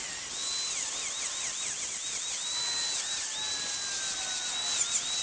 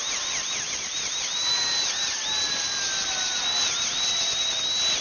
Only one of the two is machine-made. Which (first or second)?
second